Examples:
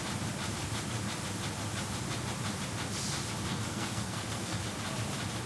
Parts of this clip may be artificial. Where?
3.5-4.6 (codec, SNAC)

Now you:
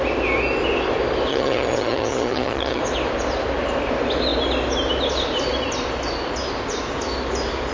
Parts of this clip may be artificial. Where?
1.3-2.8 (vocoder, HiFi-GAN)

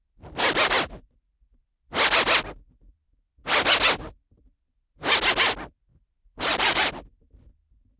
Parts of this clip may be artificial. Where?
5.9-6.9 (vocoder, BigVGAN v2)

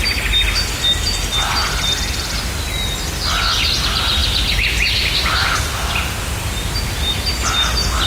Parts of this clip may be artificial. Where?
none